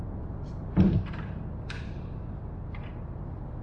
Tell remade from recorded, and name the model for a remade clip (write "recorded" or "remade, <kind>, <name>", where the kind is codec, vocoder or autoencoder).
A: remade, vocoder, BigVGAN v2